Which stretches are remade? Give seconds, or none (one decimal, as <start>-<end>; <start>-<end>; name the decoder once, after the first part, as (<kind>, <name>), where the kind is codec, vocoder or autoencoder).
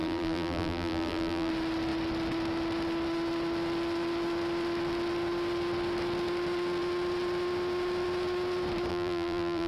0.0-1.5 (vocoder, BigVGAN v2); 8.9-9.7